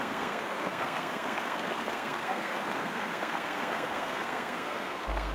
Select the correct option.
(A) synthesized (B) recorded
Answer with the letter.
A